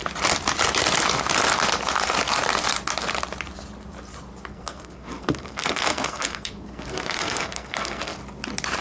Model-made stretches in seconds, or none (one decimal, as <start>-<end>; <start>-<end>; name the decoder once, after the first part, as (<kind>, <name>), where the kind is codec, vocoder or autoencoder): 4.5-8.2 (codec, SNAC)